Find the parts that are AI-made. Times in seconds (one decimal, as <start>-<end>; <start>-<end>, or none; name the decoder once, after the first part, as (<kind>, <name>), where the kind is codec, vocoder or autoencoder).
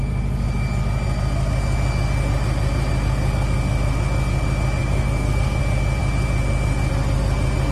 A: 4.8-5.6 (codec, SNAC)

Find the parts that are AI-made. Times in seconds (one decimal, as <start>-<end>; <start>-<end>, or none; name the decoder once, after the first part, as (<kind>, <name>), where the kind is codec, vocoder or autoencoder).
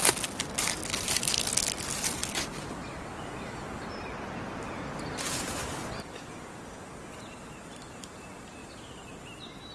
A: none